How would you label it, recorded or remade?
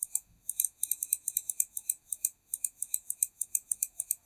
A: remade